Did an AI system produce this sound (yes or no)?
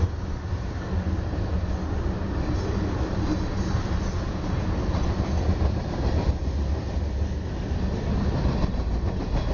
no